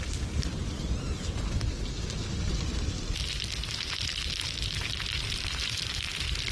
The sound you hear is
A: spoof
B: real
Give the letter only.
B